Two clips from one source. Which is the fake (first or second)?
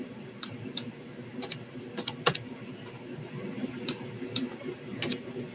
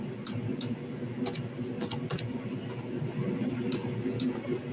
first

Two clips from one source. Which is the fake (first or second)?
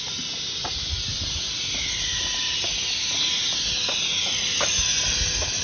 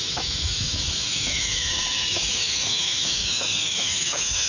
second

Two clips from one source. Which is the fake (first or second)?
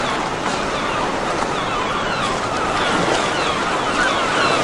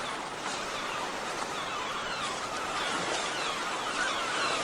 second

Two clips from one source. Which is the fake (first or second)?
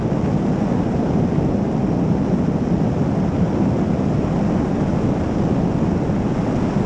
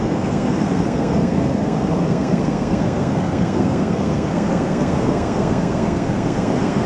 second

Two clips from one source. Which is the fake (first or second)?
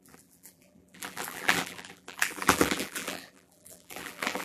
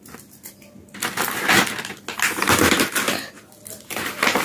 first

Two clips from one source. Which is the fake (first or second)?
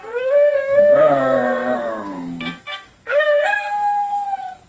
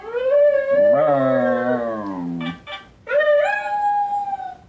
first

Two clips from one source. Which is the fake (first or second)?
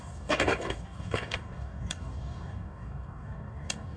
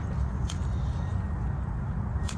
first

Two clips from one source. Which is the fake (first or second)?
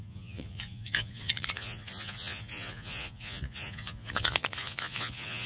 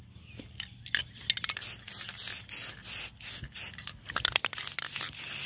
first